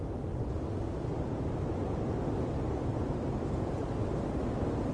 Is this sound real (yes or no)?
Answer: yes